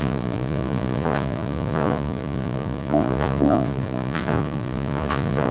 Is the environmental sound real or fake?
fake